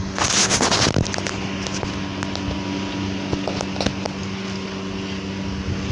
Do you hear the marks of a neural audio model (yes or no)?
no